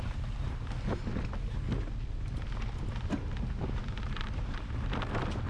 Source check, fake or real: real